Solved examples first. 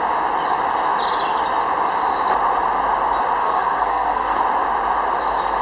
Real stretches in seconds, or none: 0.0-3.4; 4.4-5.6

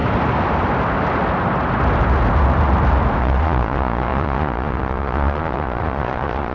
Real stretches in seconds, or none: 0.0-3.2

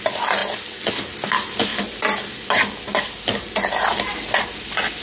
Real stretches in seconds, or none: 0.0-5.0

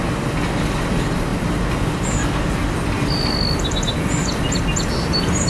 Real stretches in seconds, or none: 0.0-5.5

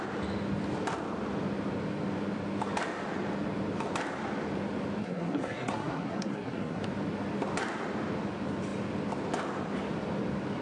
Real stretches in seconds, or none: 0.0-5.0; 6.8-10.6

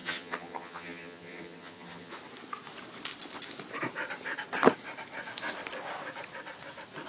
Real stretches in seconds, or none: 2.1-7.1